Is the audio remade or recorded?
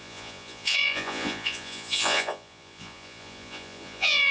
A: remade